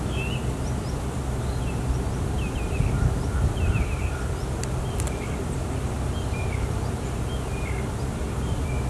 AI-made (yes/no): no